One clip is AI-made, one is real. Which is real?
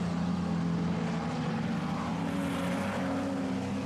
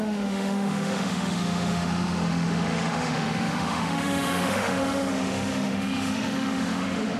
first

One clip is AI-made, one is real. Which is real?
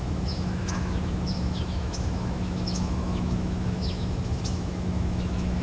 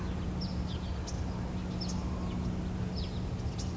second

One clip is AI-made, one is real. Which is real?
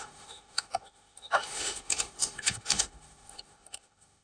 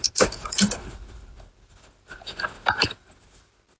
second